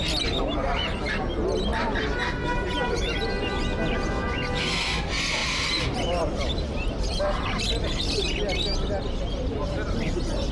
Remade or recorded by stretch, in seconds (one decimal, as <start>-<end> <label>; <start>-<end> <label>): 0.0-5.4 recorded; 5.4-8.0 remade; 8.0-10.5 recorded